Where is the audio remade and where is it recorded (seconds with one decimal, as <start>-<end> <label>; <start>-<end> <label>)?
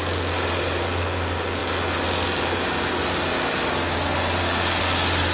0.0-5.3 recorded